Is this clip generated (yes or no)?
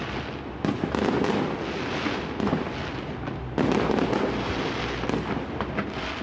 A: no